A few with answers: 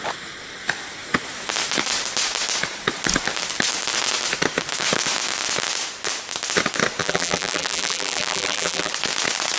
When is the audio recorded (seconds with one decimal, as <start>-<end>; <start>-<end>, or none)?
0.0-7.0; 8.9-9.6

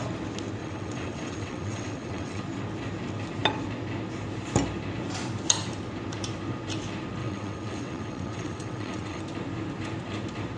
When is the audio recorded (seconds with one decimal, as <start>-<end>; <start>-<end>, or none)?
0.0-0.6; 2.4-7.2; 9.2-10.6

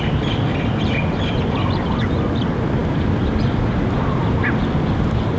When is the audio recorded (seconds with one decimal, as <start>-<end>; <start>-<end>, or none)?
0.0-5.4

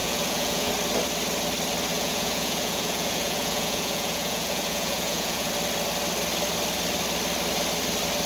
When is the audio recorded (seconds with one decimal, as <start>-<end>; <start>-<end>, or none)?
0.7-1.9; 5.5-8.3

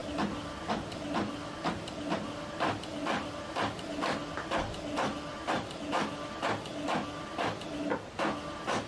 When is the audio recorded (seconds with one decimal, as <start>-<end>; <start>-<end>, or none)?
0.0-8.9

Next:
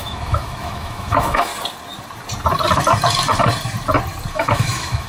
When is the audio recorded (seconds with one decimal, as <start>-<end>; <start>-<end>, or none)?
1.5-4.3

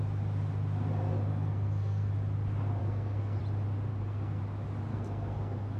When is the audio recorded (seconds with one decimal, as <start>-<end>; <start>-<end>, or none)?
0.0-1.3; 2.1-2.8; 3.4-3.9; 4.4-4.9